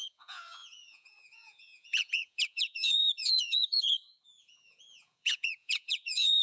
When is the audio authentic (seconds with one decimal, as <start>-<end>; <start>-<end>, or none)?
none